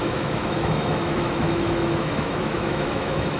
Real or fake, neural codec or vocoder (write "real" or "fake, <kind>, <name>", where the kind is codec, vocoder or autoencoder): fake, autoencoder, DAC-VAE